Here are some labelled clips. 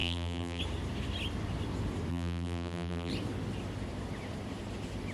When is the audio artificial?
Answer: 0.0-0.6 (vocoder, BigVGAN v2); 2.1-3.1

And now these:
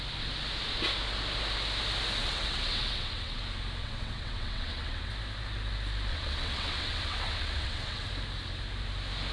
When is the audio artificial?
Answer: 2.2-3.4 (vocoder, WaveNeXt); 3.8-5.1; 6.1-8.1

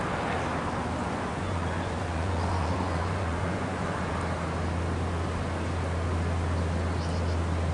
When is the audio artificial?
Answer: 1.0-4.1 (vocoder, Vocos)

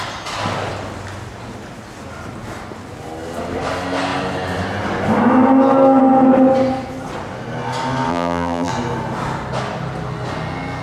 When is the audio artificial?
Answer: 8.1-8.7 (vocoder, BigVGAN v2)

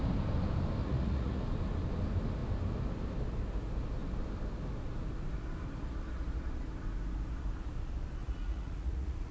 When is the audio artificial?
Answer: 0.8-1.4 (vocoder, Vocos); 8.2-9.3

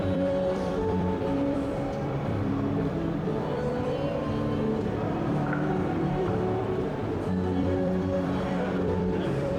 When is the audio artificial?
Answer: 0.0-4.2 (vocoder, BigVGAN v2); 4.8-7.0; 7.6-9.6

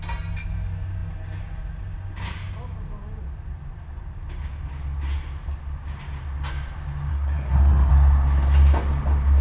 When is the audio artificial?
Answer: 7.1-7.9 (codec, SNAC)

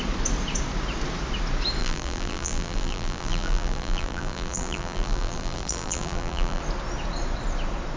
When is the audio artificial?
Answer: 1.8-6.6 (vocoder, BigVGAN v2)